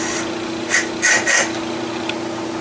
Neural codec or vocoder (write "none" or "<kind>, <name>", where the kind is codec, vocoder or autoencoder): none